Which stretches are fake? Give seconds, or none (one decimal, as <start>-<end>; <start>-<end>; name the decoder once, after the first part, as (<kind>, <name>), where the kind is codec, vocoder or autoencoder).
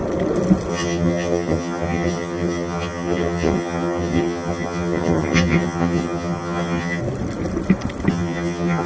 0.7-7.0 (vocoder, HiFi-GAN); 8.1-8.9